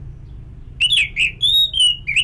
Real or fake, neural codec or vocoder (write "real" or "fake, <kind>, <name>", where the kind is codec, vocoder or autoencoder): real